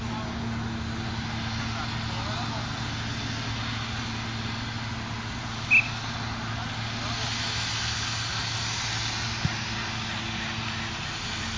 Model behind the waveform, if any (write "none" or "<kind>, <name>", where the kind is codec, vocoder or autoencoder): none